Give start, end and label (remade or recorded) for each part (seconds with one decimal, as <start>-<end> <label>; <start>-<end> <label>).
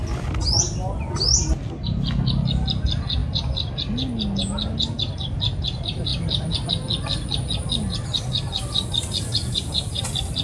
0.0-9.3 recorded; 9.3-10.0 remade; 10.0-10.4 recorded